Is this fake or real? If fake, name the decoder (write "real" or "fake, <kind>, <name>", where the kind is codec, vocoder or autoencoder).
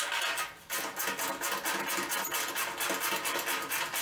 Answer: real